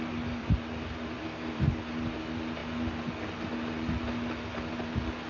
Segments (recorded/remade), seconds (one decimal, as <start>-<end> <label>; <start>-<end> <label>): 0.0-0.4 recorded; 0.4-1.6 remade; 1.6-5.3 recorded